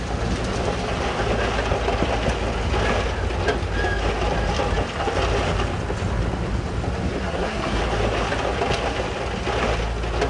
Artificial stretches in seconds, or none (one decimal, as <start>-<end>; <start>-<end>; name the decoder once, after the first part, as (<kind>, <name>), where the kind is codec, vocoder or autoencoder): 7.2-7.8 (codec, SNAC)